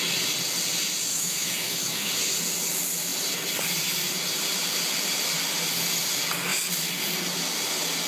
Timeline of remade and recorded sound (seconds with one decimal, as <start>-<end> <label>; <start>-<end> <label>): 0.0-1.1 recorded; 1.1-2.1 remade; 2.1-8.1 recorded